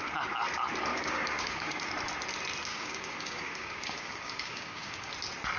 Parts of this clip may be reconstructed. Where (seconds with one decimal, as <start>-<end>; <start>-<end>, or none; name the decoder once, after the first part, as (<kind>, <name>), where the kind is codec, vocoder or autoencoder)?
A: 0.9-1.9 (codec, DAC); 2.7-5.1